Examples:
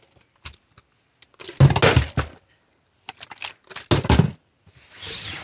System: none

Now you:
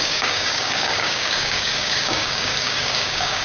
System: codec, DAC